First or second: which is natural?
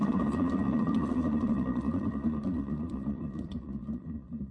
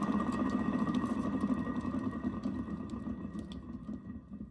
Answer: second